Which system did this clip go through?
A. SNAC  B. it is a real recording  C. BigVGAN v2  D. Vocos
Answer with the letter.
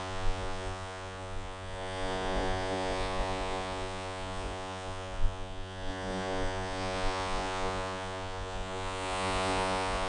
D